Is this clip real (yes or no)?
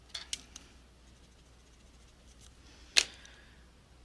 yes